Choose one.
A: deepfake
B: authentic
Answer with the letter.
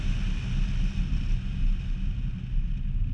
B